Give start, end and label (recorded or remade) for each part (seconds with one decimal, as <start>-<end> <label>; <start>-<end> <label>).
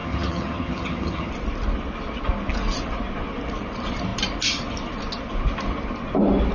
0.0-1.3 remade; 1.3-6.5 recorded